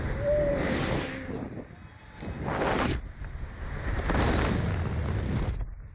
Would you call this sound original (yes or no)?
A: yes